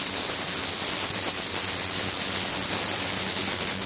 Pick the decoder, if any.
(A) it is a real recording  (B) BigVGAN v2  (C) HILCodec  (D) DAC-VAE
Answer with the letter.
A